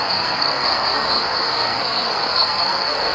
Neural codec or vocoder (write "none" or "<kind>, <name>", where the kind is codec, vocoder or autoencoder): codec, SNAC